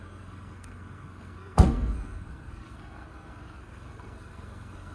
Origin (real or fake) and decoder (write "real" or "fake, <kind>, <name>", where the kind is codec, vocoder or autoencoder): fake, codec, SNAC